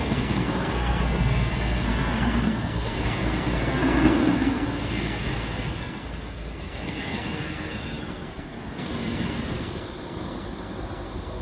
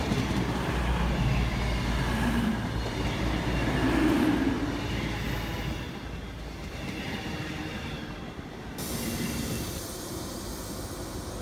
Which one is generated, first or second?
first